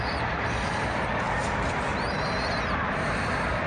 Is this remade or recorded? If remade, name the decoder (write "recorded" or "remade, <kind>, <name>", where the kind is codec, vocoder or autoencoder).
recorded